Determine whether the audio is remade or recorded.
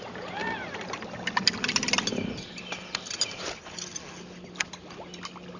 recorded